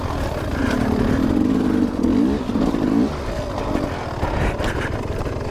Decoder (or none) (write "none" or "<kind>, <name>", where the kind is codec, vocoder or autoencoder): none